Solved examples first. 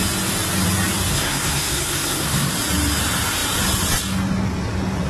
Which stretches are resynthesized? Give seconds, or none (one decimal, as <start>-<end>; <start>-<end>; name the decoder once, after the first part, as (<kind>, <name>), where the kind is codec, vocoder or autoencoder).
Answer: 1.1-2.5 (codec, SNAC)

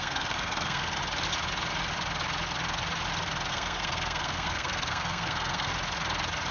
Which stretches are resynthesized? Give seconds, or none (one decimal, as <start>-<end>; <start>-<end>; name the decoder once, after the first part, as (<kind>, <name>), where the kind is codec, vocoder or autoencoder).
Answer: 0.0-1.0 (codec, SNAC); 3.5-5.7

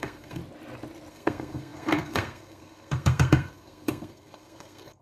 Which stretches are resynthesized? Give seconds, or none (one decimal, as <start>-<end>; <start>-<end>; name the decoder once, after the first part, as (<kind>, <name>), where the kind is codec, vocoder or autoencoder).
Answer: 0.0-0.4 (codec, SNAC); 1.1-5.0

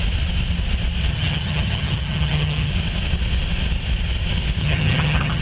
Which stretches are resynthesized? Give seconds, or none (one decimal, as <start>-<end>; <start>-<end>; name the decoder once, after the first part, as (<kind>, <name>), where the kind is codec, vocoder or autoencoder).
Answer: 1.1-2.7 (vocoder, HiFi-GAN); 4.6-5.4